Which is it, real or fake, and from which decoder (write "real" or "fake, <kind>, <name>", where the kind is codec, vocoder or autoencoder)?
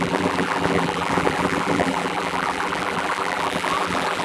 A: fake, vocoder, BigVGAN v2